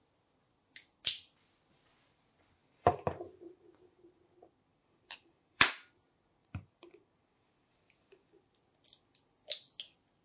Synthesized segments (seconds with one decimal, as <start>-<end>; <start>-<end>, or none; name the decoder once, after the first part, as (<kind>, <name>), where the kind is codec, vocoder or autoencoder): 2.6-3.2 (vocoder, BigVGAN v2); 4.7-5.7; 6.4-8.3